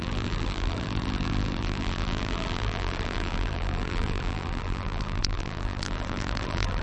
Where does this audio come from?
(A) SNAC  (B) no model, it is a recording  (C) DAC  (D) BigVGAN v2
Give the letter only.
D